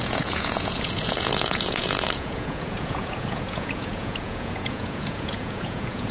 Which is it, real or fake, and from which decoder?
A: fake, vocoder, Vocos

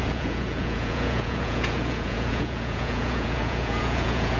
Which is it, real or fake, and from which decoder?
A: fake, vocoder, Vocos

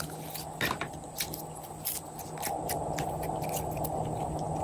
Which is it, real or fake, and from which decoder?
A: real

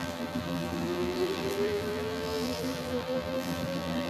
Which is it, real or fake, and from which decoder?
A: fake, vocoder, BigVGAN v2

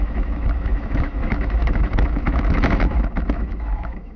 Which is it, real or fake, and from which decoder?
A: fake, autoencoder, DAC-VAE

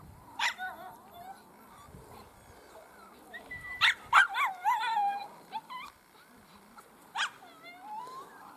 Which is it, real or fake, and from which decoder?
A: fake, vocoder, BigVGAN v2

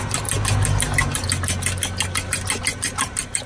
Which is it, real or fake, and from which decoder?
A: real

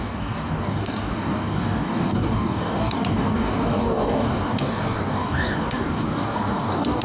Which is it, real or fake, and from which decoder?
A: fake, codec, DAC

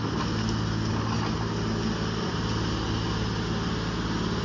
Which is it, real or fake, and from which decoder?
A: real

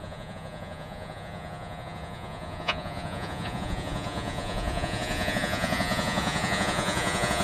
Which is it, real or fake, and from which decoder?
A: fake, vocoder, Vocos